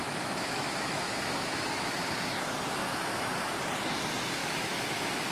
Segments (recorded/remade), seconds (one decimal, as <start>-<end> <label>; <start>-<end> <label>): 0.0-2.0 remade; 2.0-2.8 recorded; 2.8-3.3 remade; 3.3-4.4 recorded; 4.4-5.3 remade